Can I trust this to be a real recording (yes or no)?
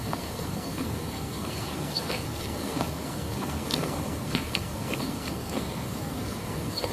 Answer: no